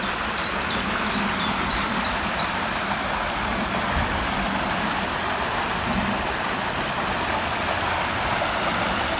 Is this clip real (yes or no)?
yes